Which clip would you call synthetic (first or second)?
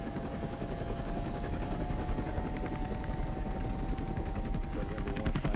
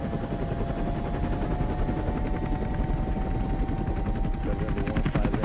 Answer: first